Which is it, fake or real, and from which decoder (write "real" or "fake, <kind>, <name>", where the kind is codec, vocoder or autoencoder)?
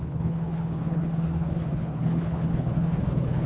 fake, codec, HILCodec